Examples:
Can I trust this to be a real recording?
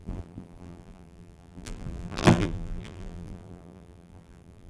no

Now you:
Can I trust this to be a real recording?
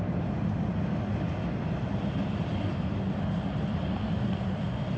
yes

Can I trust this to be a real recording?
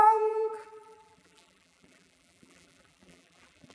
no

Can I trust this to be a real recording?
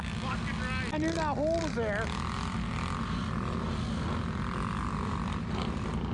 yes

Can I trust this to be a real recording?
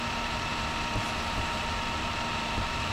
no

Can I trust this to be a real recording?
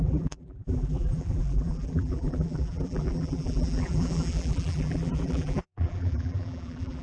no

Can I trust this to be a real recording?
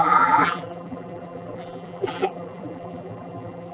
no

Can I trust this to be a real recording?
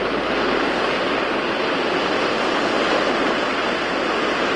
yes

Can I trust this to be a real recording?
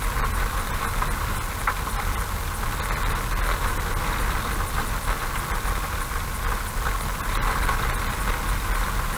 yes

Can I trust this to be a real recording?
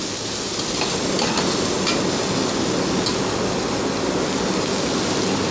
yes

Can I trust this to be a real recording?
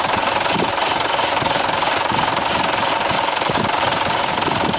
no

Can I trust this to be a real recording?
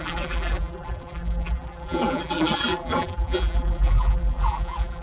no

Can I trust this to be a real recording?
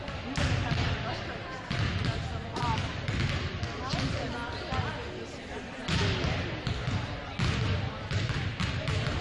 yes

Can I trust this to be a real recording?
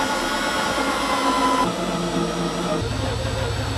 yes